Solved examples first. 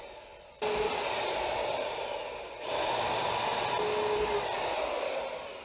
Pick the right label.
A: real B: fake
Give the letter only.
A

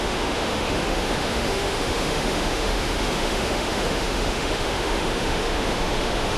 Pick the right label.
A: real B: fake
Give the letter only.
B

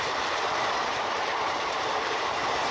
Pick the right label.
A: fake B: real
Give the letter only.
A